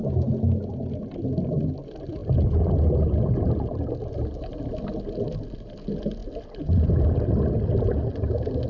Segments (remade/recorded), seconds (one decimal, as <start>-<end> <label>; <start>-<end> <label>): 0.0-8.7 recorded